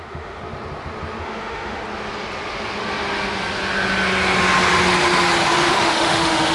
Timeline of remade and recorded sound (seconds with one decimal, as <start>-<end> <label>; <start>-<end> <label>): 0.0-0.4 remade; 0.4-1.2 recorded; 1.2-1.8 remade; 1.8-5.7 recorded; 5.7-6.5 remade